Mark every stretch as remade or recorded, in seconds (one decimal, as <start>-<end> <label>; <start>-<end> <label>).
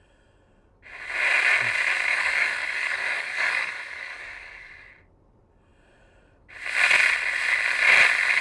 0.0-2.1 recorded; 2.1-4.9 remade; 4.9-8.4 recorded